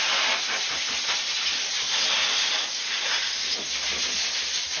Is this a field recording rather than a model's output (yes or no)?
yes